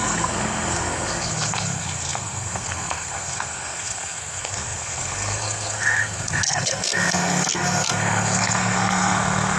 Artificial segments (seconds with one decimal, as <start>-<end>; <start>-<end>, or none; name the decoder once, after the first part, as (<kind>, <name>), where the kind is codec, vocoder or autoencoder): 0.0-9.6 (codec, SNAC)